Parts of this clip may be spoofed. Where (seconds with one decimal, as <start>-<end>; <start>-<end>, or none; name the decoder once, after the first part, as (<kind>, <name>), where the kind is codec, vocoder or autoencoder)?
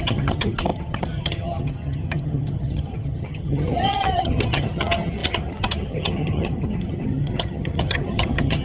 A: 0.0-8.6 (vocoder, HiFi-GAN)